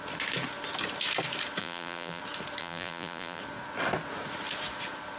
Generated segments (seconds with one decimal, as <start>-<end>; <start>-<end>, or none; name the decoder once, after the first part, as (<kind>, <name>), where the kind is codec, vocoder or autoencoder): 1.6-2.2 (vocoder, BigVGAN v2); 2.6-3.4